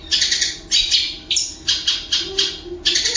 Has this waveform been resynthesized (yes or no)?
no